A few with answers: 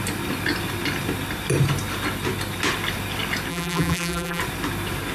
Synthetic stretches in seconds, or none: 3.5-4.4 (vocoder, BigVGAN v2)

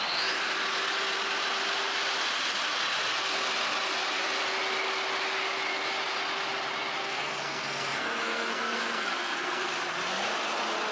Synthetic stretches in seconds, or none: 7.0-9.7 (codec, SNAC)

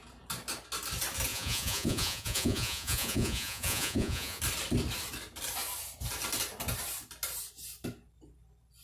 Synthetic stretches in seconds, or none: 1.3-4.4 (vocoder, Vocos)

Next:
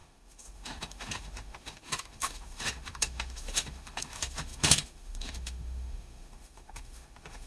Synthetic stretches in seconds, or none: 0.0-7.5 (autoencoder, DAC-VAE)

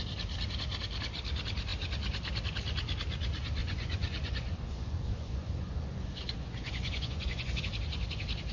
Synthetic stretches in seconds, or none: 3.6-7.6 (vocoder, Vocos)

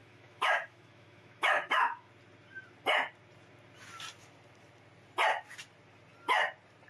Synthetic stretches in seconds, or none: 0.0-2.1 (autoencoder, DAC-VAE)